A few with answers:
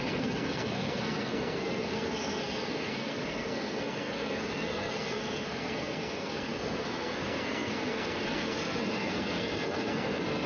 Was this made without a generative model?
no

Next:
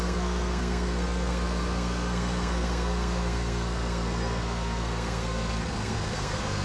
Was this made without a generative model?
no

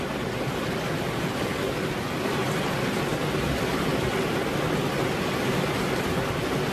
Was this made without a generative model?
yes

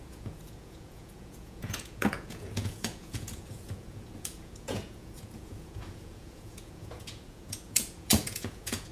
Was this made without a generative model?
no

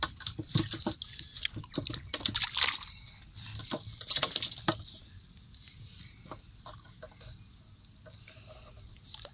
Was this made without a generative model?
yes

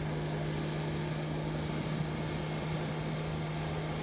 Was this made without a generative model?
yes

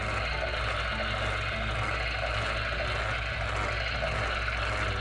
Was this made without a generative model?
yes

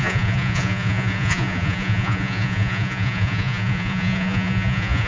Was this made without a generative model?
no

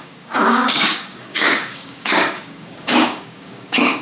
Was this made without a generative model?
no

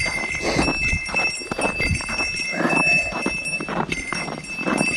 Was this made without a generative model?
yes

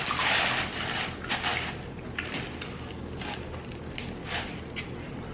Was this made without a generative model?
yes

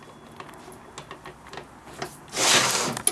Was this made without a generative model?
yes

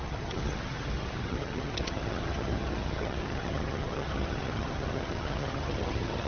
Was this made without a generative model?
no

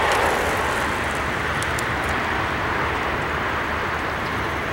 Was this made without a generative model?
yes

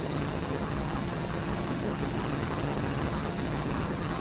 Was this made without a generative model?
no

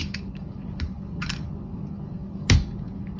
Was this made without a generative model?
no